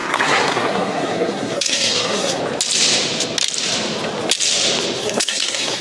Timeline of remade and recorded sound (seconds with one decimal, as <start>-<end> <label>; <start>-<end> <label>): 0.0-2.4 remade; 2.4-5.0 recorded; 5.0-5.8 remade